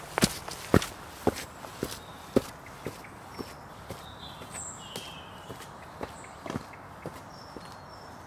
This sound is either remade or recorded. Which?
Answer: recorded